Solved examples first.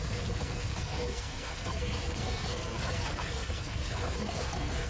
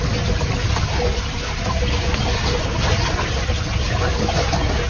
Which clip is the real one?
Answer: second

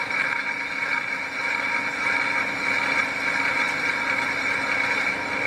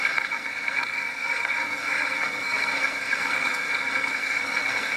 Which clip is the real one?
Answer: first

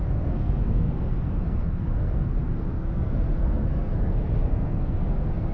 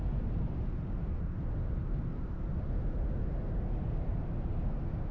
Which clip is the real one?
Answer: second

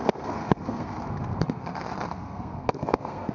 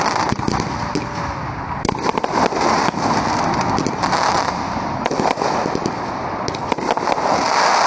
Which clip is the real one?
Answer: second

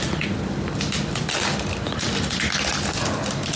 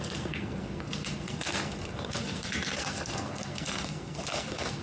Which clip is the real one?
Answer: first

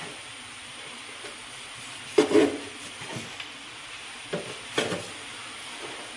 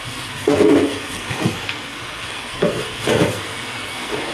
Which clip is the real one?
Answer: first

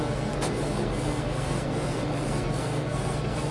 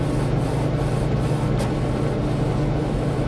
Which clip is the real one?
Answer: second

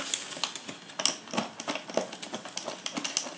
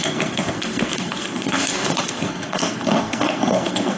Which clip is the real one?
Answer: first